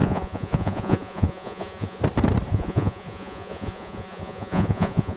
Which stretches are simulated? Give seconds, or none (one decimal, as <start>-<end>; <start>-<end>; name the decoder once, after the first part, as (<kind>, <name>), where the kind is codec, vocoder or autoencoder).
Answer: 0.0-2.0 (vocoder, Vocos); 2.5-5.2